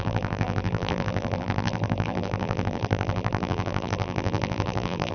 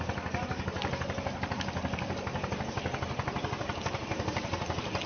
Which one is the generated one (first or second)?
first